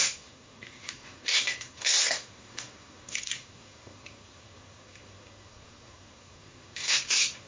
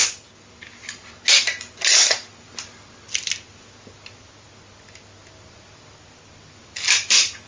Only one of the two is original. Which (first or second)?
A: second